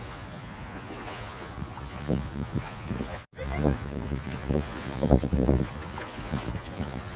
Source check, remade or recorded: remade